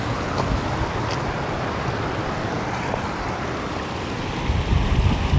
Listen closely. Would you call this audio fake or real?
real